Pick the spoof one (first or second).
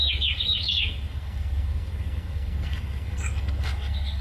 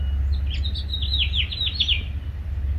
first